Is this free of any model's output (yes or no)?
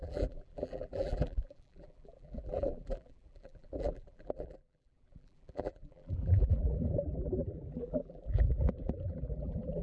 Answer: no